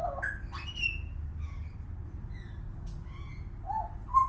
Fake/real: real